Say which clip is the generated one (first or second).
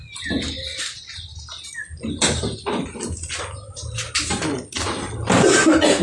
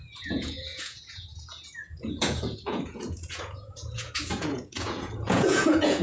second